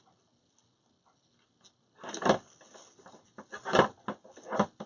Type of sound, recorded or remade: recorded